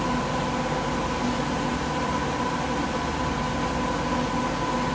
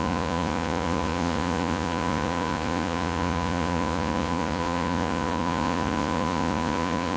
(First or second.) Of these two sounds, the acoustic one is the first